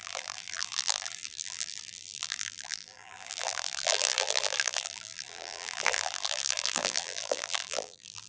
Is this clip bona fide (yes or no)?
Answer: no